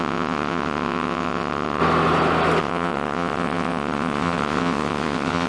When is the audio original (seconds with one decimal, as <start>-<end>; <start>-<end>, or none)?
1.8-2.6